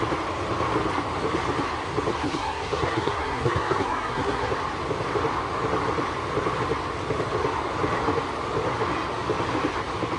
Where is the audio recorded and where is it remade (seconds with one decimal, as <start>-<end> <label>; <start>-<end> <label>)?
0.0-2.1 recorded; 2.1-4.5 remade; 4.5-10.2 recorded